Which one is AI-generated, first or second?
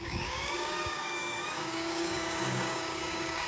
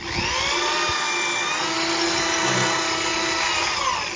first